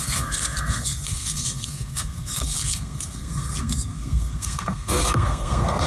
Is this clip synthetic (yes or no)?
yes